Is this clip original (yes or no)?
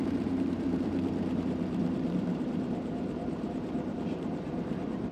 no